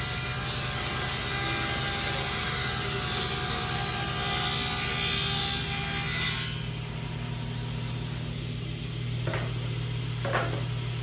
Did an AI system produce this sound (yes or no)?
no